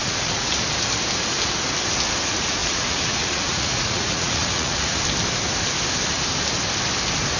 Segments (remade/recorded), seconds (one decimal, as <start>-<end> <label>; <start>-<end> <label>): 0.0-0.5 remade; 0.5-2.6 recorded; 2.6-5.0 remade; 5.0-7.4 recorded